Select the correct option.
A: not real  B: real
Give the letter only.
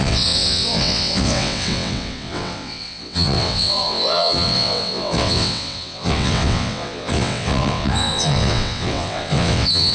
A